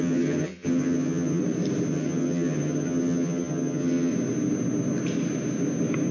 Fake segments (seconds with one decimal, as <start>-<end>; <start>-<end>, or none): 0.0-1.4; 1.9-4.1